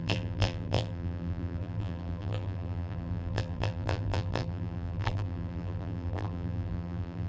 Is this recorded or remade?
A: remade